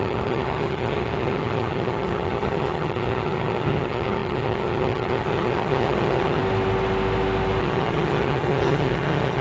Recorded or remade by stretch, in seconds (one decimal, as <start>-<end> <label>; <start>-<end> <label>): 0.0-6.4 remade; 6.4-7.6 recorded; 7.6-9.4 remade